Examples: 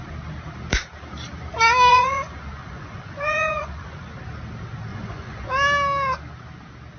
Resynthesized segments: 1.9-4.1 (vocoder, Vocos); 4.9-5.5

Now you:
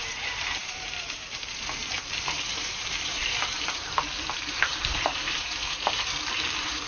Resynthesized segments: 0.0-6.9 (vocoder, BigVGAN v2)

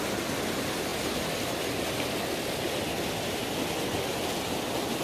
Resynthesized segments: none

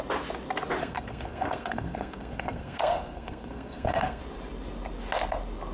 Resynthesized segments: 0.8-4.2 (codec, SNAC)

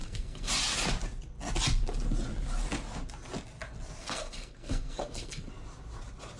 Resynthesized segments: 0.0-0.5 (codec, SNAC); 4.0-5.5

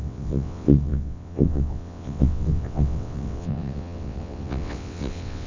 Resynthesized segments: 0.0-5.5 (vocoder, WaveNeXt)

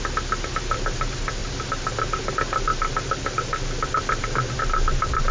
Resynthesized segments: none